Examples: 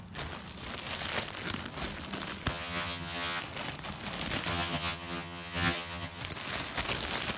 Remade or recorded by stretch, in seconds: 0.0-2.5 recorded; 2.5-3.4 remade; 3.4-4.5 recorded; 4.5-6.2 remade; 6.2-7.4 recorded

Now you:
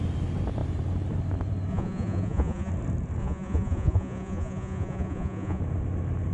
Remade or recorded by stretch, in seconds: 0.0-1.7 recorded; 1.7-2.7 remade; 2.7-3.2 recorded; 3.2-5.6 remade; 5.6-6.3 recorded

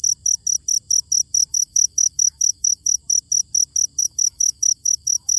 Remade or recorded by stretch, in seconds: 0.0-1.5 recorded; 1.5-3.0 remade; 3.0-4.0 recorded; 4.0-5.4 remade

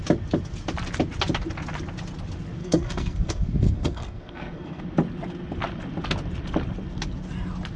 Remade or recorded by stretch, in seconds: 0.0-2.6 recorded; 2.6-4.8 remade; 4.8-7.8 recorded

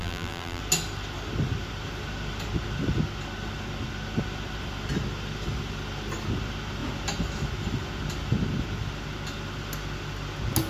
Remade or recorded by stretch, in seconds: 0.0-0.6 remade; 0.6-10.7 recorded

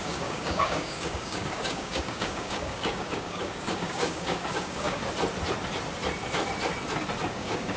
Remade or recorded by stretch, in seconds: 0.0-5.0 remade; 5.0-7.3 recorded; 7.3-7.8 remade